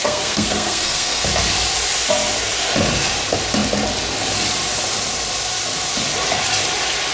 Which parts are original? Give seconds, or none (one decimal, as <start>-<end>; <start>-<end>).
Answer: 1.3-7.1